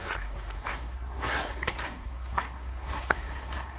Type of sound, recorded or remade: remade